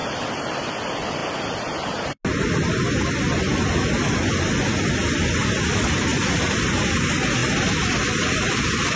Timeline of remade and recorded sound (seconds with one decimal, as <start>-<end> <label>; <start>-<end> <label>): 0.0-0.7 remade; 0.7-7.4 recorded; 7.4-8.6 remade; 8.6-9.0 recorded